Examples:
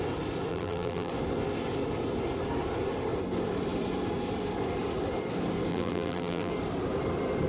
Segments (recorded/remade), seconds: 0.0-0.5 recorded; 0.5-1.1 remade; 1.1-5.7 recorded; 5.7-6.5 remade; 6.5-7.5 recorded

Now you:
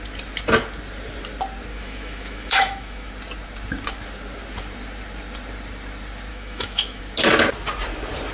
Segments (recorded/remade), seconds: 0.0-1.7 recorded; 1.7-3.1 remade; 3.1-6.3 recorded; 6.3-7.0 remade; 7.0-8.3 recorded